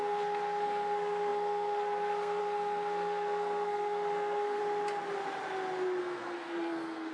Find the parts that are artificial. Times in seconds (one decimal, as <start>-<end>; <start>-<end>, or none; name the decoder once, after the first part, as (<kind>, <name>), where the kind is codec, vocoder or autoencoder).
0.0-4.6 (codec, SNAC); 6.0-7.1